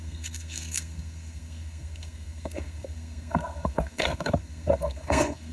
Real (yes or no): no